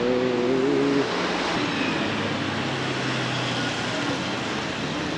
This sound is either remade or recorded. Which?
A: recorded